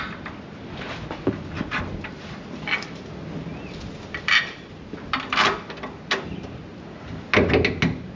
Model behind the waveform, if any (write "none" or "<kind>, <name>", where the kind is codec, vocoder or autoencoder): none